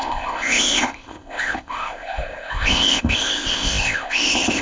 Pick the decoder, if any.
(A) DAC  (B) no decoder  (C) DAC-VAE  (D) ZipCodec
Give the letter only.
D